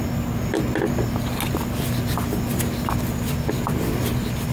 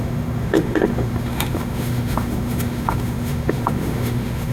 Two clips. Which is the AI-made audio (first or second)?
second